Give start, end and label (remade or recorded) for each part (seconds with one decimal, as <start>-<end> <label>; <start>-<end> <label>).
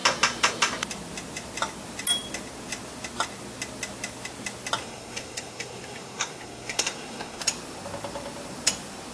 0.0-4.8 recorded; 4.8-7.4 remade; 7.4-9.1 recorded